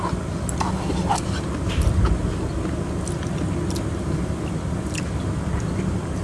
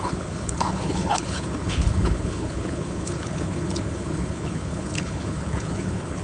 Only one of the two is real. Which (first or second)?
first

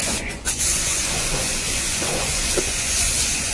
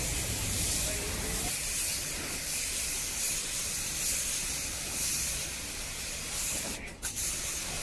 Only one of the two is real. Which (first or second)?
second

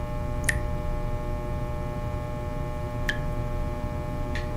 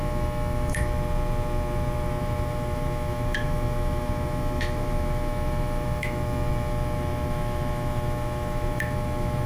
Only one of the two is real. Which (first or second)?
first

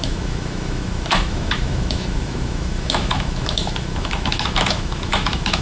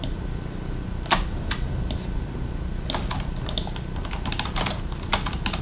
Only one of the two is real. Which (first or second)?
second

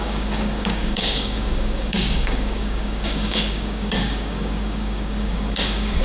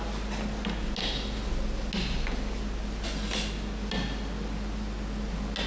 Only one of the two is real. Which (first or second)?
second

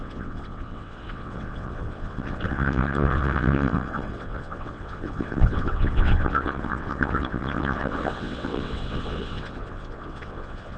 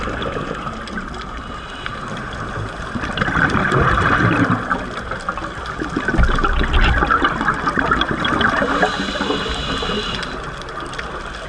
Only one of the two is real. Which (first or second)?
second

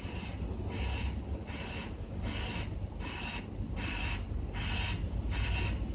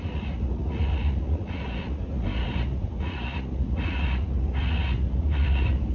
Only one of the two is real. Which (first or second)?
first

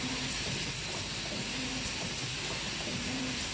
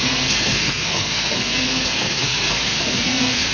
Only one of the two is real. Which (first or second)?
first